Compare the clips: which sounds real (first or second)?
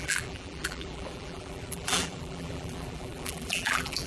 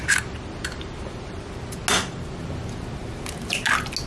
second